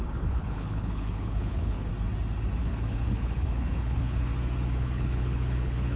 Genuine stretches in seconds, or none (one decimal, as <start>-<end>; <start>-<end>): 1.9-2.6; 4.3-4.8